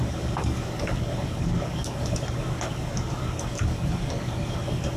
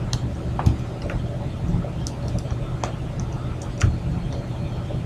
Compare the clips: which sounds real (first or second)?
second